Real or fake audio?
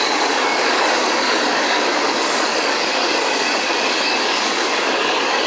fake